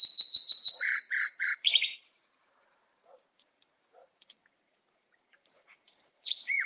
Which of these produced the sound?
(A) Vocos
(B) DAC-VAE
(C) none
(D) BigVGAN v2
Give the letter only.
A